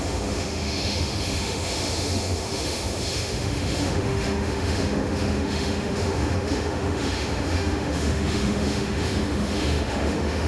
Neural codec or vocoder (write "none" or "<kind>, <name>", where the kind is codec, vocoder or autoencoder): autoencoder, DAC-VAE